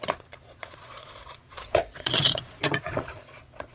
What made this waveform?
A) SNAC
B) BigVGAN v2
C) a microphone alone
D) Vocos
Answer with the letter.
D